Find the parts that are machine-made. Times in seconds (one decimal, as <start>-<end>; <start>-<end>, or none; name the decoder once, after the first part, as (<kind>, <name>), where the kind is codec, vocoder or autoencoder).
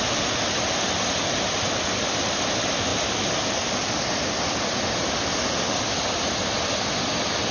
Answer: none